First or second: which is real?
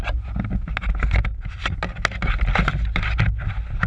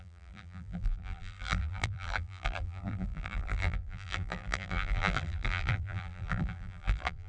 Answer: first